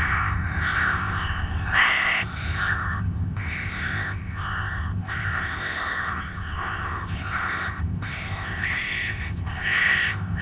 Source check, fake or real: fake